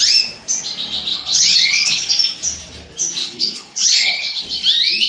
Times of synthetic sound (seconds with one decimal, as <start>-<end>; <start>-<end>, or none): 1.1-2.1; 3.2-4.4